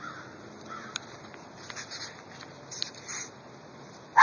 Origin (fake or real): real